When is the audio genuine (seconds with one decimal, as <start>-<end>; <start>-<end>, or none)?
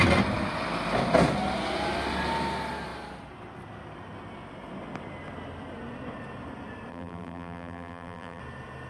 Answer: 0.0-6.9; 8.4-8.9